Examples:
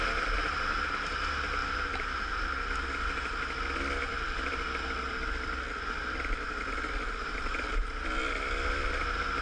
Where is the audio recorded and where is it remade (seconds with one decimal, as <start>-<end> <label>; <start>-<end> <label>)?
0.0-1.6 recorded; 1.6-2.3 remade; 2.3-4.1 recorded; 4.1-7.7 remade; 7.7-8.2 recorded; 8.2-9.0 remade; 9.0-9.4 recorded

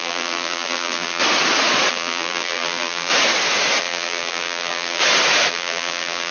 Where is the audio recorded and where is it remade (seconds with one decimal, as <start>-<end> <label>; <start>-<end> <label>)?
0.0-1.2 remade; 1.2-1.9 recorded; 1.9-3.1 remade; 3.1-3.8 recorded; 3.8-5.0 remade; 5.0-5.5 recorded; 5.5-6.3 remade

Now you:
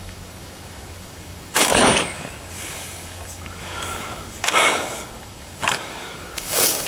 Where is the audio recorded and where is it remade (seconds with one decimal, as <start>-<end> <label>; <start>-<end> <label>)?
0.0-6.9 remade

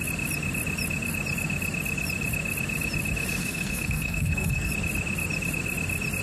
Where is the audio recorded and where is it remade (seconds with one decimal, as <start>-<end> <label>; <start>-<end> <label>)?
0.0-3.4 recorded; 3.4-4.7 remade; 4.7-6.2 recorded